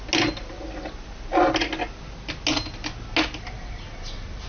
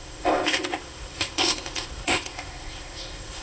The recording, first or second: first